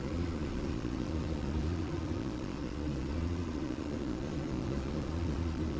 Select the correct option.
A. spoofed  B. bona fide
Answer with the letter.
A